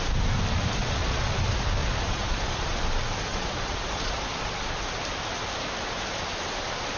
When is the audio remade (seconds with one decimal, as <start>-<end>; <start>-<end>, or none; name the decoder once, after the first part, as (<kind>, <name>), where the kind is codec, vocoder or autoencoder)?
0.8-1.4 (vocoder, Vocos); 1.8-2.8; 3.3-4.8